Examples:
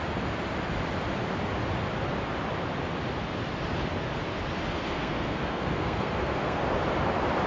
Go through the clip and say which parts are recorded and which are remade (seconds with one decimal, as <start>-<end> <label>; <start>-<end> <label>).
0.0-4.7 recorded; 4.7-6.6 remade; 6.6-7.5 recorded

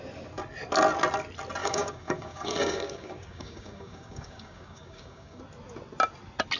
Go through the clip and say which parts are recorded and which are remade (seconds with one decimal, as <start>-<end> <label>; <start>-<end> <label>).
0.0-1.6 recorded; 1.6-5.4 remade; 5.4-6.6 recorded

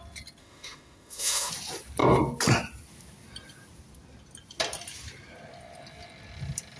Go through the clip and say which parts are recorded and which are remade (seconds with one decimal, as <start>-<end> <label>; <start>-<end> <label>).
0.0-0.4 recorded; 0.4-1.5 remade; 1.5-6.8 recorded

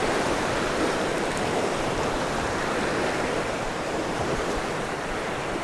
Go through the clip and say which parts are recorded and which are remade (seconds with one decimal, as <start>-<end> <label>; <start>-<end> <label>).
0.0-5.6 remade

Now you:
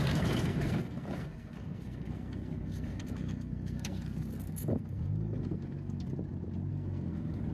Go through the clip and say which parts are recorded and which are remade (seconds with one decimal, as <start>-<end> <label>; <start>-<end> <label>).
0.0-6.1 remade; 6.1-6.7 recorded; 6.7-7.5 remade